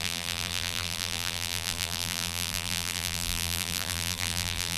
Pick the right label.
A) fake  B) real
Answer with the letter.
A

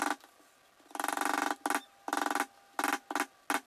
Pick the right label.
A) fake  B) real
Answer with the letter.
B